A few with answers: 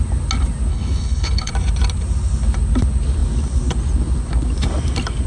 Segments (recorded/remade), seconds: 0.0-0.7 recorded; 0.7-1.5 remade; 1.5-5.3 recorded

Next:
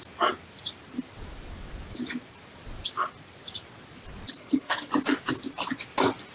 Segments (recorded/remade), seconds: 0.0-4.4 recorded; 4.4-4.9 remade; 4.9-6.3 recorded

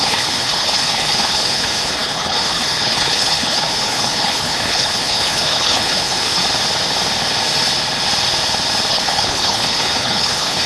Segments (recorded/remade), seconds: 0.0-6.4 remade; 6.4-8.9 recorded; 8.9-10.7 remade

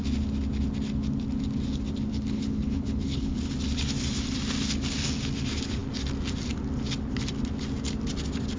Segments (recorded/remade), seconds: 0.0-2.1 recorded; 2.1-3.4 remade; 3.4-8.6 recorded

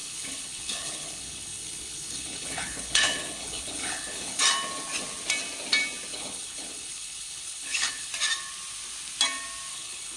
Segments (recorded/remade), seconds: 0.0-4.4 remade; 4.4-6.1 recorded; 6.1-8.1 remade; 8.1-9.7 recorded; 9.7-10.2 remade